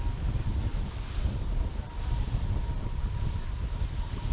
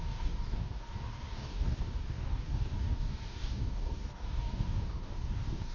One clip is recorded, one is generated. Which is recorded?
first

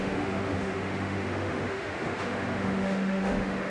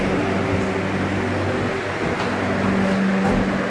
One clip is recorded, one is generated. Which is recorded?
second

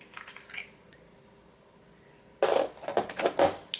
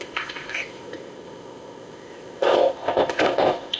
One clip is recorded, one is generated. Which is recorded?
first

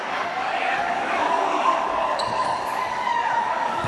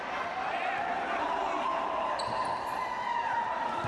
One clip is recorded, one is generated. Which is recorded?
second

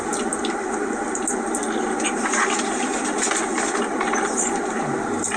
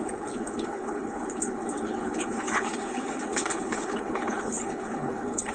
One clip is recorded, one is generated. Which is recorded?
first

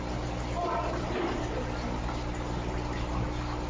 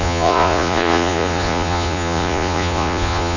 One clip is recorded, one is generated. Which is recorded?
first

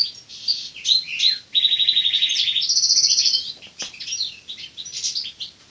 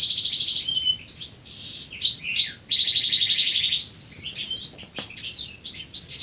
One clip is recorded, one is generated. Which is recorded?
second